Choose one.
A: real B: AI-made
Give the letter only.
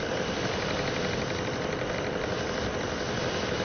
A